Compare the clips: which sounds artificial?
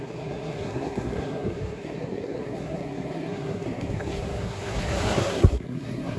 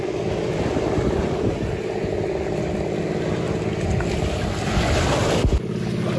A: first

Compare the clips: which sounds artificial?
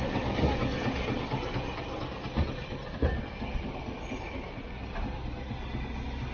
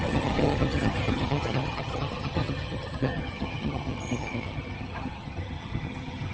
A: second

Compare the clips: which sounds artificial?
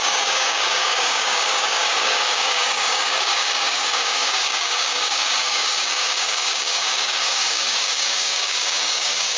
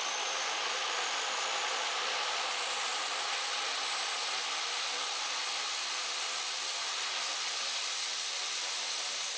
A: first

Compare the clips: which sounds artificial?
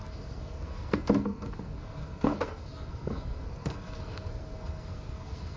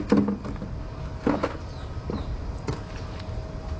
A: first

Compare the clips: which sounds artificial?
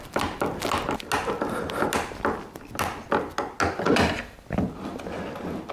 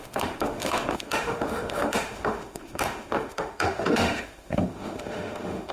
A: second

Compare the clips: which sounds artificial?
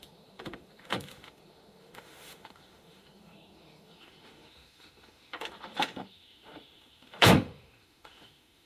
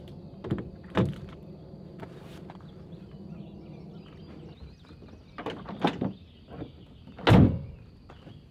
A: first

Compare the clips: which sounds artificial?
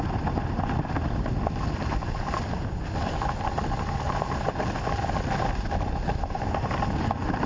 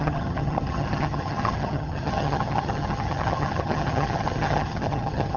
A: second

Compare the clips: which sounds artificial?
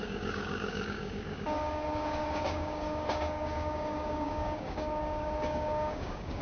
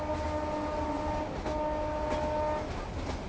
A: first